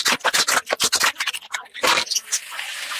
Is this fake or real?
real